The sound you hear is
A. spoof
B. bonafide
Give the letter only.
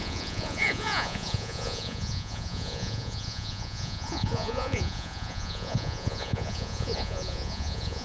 A